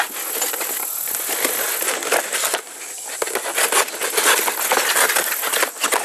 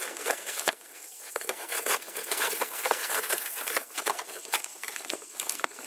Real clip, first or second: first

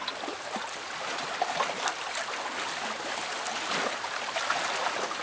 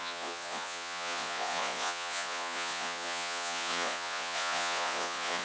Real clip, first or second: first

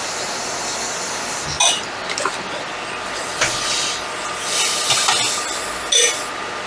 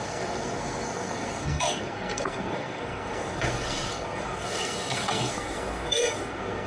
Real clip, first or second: first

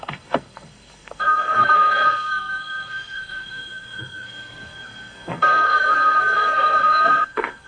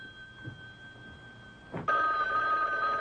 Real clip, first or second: second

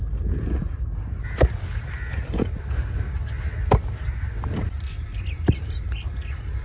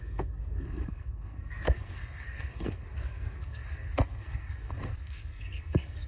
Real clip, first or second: first